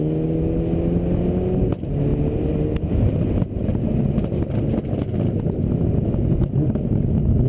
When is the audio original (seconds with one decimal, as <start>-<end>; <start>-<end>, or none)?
0.0-7.5